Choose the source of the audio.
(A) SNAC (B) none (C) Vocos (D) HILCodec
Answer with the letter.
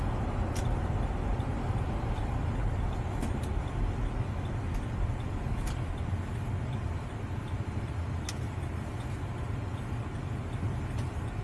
B